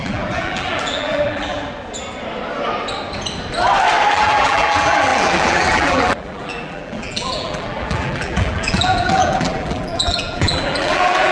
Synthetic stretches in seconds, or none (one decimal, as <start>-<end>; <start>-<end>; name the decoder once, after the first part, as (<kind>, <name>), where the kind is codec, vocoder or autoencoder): 0.0-1.6 (vocoder, BigVGAN v2); 4.1-11.3